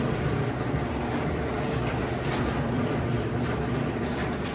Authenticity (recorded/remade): remade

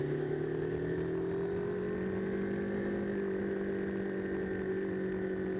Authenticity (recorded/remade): recorded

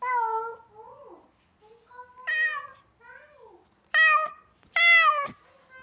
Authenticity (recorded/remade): recorded